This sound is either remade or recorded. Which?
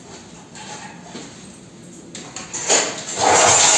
recorded